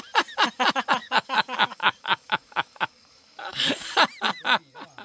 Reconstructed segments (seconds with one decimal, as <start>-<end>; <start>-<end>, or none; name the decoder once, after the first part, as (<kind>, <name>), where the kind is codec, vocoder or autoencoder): 1.0-4.0 (codec, DAC)